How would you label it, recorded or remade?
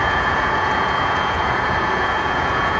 remade